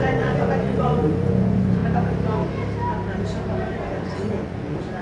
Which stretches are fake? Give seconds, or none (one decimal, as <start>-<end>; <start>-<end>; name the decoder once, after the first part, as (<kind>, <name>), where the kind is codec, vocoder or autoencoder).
0.0-1.8 (vocoder, Vocos); 3.8-5.0

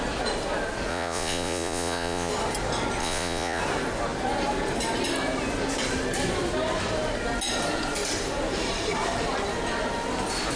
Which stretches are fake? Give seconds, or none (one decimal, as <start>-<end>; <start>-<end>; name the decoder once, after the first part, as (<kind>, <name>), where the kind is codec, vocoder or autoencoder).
0.9-2.3 (vocoder, Vocos); 3.0-3.6

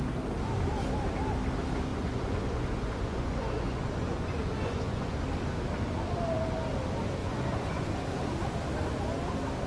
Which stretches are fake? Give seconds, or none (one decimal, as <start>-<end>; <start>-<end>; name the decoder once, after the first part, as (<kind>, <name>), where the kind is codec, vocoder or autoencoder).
1.9-5.2 (vocoder, Vocos); 7.2-8.0

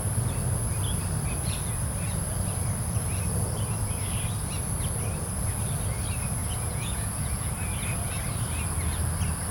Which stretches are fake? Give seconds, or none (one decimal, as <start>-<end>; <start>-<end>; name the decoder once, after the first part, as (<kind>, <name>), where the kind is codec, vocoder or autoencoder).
6.4-7.5 (vocoder, Vocos)

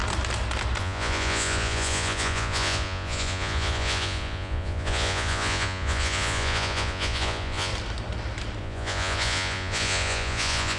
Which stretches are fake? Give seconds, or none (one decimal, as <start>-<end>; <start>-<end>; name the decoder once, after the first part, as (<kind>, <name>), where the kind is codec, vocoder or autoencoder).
0.8-7.7 (vocoder, Vocos); 8.6-10.8